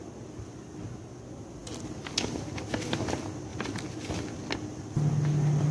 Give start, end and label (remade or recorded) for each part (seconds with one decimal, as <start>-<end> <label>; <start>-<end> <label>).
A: 0.0-5.7 recorded